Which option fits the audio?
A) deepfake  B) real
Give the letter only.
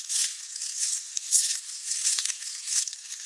A